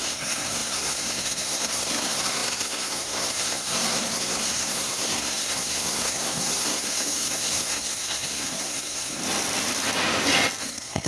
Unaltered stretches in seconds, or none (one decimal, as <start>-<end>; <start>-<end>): 9.2-10.6